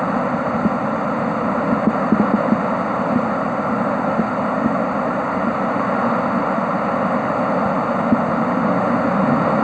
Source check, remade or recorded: recorded